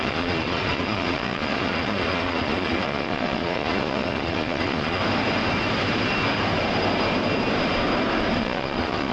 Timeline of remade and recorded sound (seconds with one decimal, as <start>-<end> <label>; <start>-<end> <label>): 0.0-5.0 remade; 5.0-8.4 recorded; 8.4-9.1 remade